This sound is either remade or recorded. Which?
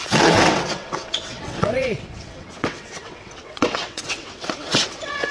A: remade